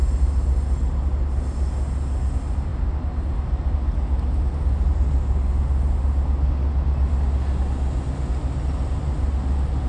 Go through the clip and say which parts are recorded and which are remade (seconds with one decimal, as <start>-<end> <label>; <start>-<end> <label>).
0.0-9.9 recorded